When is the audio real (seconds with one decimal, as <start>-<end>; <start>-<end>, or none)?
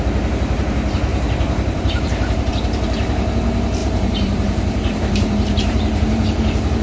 0.0-1.1; 2.5-3.8